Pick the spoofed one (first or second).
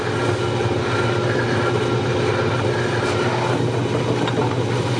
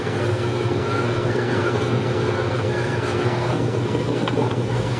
second